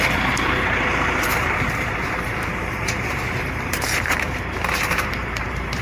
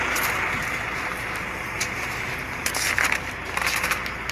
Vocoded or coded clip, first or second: first